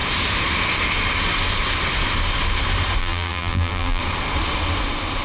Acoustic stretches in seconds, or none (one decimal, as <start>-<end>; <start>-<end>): 0.0-3.0; 4.0-5.2